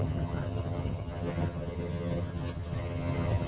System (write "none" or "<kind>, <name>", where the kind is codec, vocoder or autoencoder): vocoder, HiFi-GAN